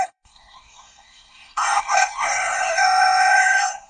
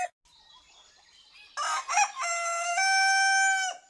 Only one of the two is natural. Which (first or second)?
second